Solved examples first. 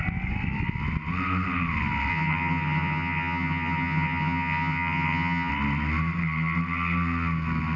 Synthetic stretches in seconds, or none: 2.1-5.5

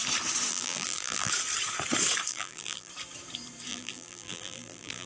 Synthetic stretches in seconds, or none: 0.5-1.3; 2.3-2.9; 3.7-5.1

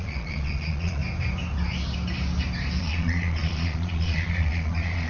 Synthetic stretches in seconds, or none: 0.0-1.0; 2.8-5.1

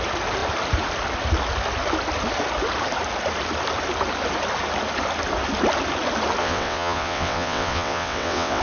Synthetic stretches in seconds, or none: 6.4-8.6

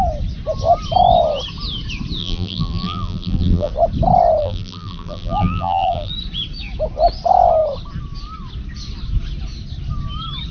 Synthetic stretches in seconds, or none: 2.2-3.7; 4.4-6.1

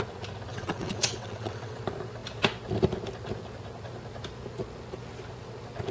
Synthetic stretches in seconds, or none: 0.5-1.8